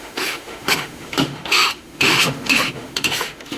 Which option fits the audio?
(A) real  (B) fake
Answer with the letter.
B